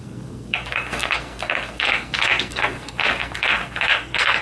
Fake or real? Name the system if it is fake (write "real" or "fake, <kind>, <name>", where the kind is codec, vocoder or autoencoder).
fake, codec, SNAC